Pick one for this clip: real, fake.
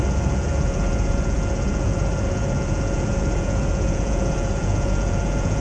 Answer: fake